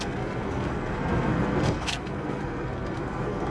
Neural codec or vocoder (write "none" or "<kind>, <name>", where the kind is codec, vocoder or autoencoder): codec, SNAC